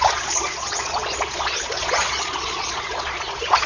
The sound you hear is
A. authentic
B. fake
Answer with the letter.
B